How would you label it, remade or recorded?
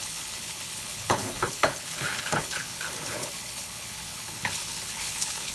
remade